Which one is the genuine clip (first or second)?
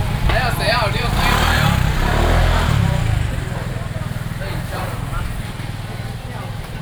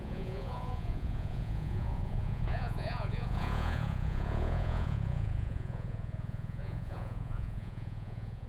first